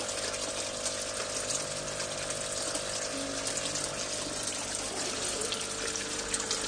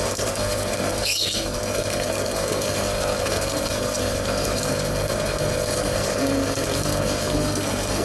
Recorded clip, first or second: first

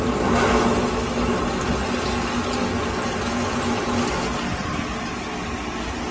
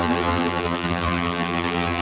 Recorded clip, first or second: first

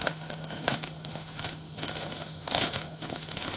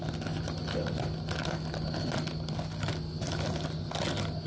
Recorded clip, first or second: second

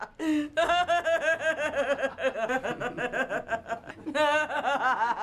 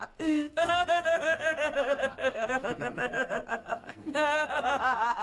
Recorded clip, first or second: first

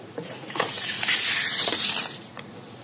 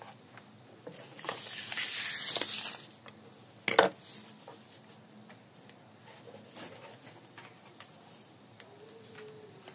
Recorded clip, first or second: second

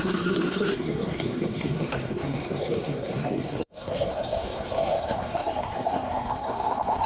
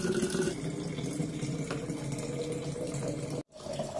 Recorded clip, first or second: second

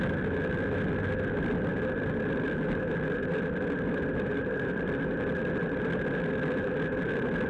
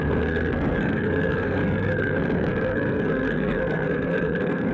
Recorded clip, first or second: first